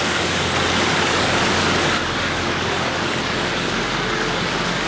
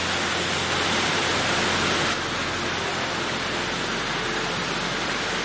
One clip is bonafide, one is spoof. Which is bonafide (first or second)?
second